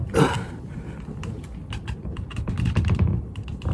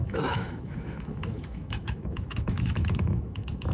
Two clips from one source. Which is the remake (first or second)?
second